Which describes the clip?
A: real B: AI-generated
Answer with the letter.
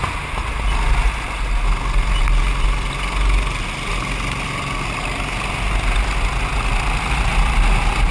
A